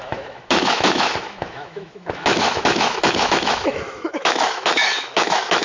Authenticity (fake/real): fake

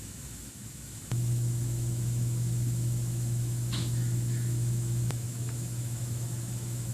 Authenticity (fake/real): fake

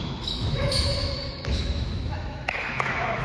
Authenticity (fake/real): fake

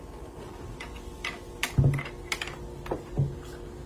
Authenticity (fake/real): real